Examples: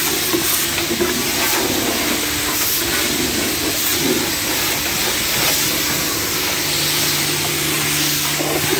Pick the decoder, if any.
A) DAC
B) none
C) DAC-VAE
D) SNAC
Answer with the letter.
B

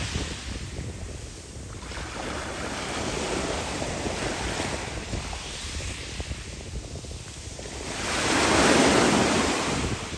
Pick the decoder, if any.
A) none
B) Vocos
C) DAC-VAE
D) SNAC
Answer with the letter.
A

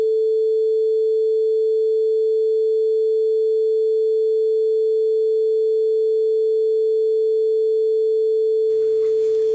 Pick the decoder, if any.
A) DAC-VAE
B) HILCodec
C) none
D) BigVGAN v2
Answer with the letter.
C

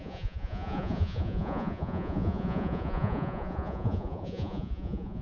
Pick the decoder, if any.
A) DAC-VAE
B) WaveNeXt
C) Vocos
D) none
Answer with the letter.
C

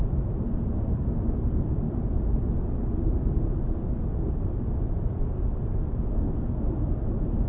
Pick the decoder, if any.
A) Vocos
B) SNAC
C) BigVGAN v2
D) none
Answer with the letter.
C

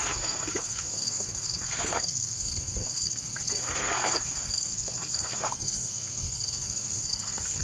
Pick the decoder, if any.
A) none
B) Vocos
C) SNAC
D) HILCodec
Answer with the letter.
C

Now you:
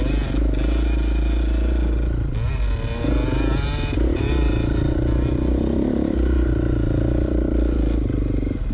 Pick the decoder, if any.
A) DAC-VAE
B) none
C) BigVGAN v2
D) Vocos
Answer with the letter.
B